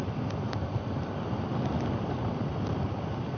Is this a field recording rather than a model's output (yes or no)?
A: yes